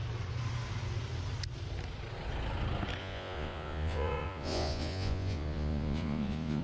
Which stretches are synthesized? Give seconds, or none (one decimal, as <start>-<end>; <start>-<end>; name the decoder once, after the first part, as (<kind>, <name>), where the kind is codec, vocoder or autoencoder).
3.0-6.6 (vocoder, Vocos)